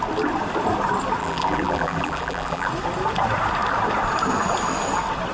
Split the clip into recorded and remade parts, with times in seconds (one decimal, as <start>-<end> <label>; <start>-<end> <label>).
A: 0.0-1.2 recorded; 1.2-2.7 remade; 2.7-5.3 recorded